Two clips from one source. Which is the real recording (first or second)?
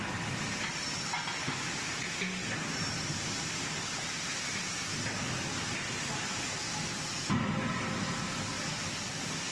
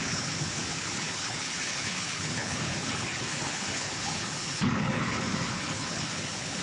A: first